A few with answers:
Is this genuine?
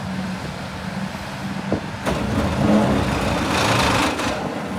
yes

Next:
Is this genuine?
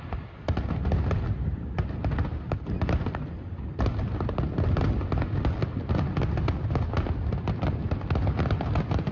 yes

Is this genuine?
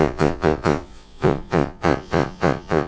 no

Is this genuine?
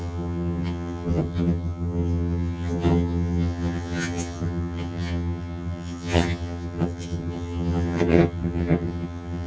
no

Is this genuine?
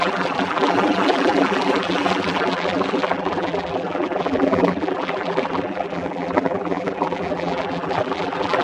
no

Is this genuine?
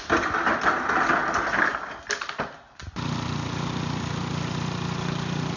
yes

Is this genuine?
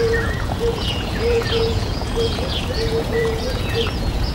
no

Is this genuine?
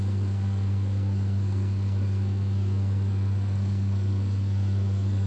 no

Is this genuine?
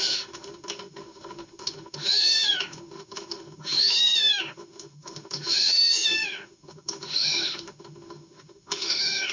no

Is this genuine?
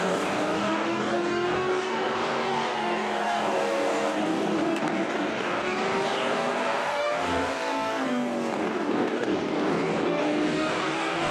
no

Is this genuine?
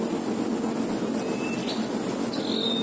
yes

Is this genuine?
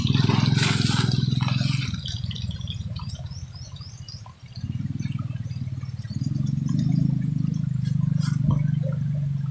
yes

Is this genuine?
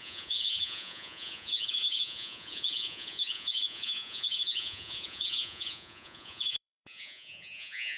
no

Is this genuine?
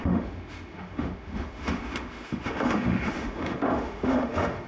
no